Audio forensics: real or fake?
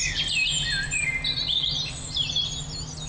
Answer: real